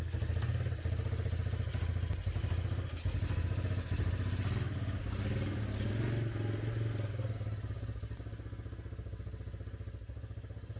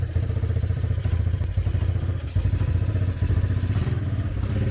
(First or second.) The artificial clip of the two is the second